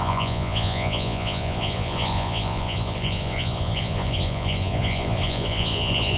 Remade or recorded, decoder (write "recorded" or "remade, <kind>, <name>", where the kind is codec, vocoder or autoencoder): remade, vocoder, Vocos